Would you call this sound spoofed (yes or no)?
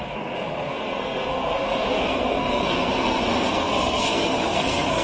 yes